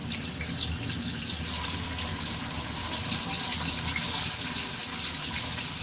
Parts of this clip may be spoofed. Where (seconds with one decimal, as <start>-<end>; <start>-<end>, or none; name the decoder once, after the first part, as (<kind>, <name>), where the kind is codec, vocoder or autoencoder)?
none